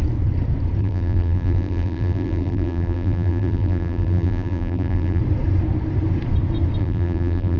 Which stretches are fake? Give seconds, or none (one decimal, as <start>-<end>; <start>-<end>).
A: 0.8-5.2; 6.8-7.6